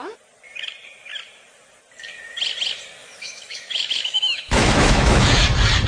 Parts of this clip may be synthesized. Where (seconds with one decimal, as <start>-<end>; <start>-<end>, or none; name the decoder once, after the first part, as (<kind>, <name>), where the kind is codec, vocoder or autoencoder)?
3.0-5.4 (autoencoder, DAC-VAE)